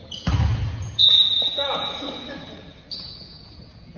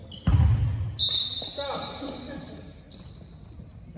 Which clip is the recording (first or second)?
second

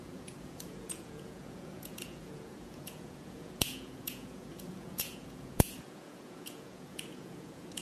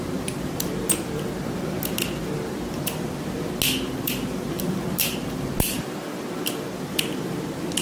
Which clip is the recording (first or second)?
second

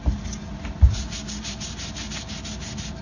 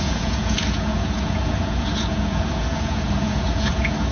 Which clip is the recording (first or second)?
first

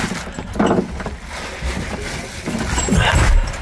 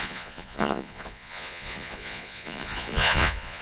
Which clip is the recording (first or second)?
first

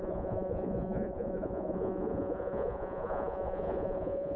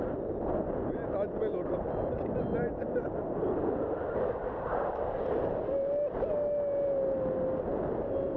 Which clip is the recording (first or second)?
second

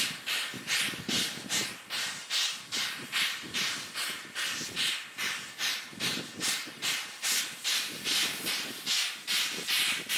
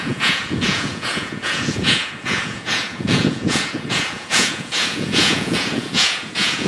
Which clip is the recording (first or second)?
first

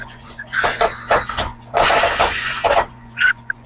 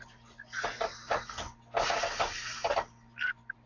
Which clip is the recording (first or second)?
second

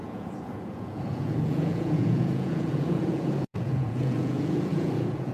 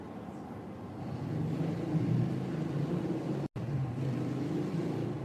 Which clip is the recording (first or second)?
second